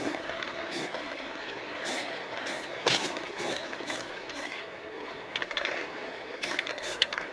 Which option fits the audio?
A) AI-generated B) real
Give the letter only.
A